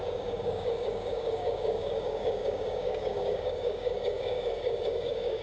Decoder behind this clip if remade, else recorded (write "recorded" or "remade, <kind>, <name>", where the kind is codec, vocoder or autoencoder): remade, codec, DAC